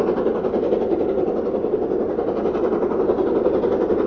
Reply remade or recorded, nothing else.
recorded